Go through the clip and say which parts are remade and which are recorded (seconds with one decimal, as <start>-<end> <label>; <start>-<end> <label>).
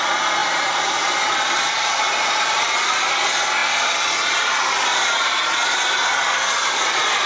0.0-0.4 recorded; 0.4-1.2 remade; 1.2-2.2 recorded; 2.2-2.8 remade; 2.8-7.3 recorded